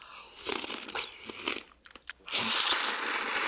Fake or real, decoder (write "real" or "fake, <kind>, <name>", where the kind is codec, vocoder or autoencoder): real